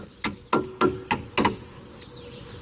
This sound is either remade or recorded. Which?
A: recorded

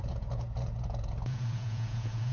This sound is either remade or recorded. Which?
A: remade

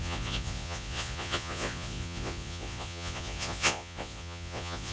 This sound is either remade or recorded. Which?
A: remade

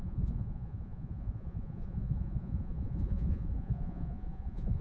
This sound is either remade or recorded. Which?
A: remade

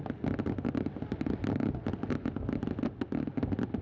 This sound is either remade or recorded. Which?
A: recorded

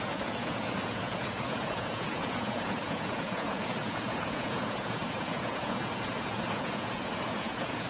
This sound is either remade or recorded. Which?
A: remade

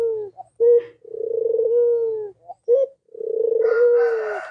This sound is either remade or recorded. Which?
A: recorded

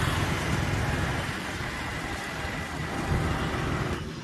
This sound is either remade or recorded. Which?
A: recorded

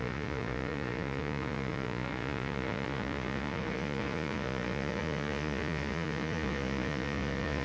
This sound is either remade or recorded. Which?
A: remade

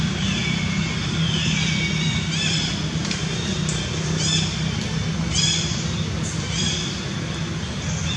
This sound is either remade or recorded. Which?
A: recorded